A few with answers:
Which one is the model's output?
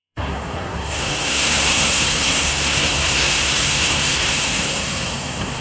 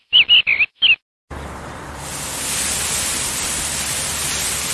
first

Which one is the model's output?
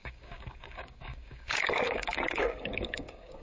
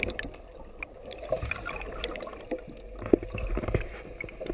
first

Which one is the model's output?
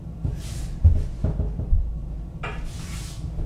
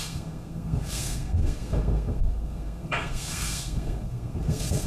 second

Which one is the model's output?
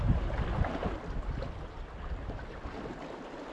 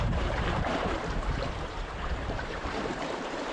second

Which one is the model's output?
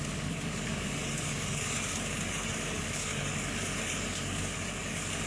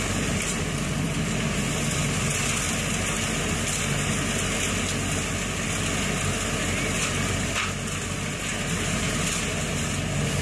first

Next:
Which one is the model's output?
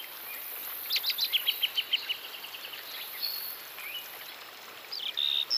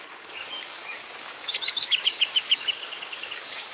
second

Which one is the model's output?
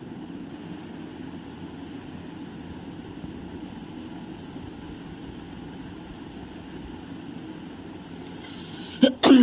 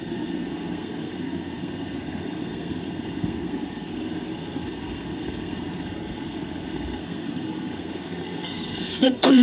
second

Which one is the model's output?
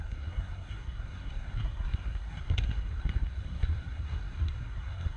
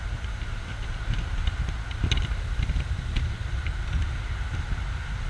first